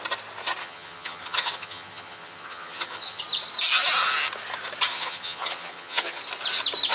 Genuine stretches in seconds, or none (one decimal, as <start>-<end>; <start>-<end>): 0.0-0.6; 3.2-4.9; 6.2-6.9